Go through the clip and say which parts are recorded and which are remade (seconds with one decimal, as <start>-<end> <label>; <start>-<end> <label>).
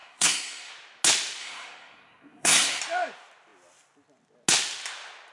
0.0-0.7 remade; 0.7-1.4 recorded; 1.4-2.8 remade; 2.8-5.3 recorded